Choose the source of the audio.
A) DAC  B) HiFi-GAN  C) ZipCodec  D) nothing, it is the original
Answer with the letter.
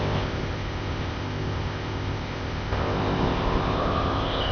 C